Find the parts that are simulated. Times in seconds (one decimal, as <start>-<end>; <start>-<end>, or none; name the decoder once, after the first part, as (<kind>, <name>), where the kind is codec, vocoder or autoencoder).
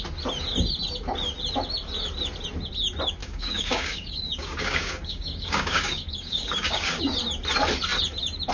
3.2-7.0 (codec, DAC)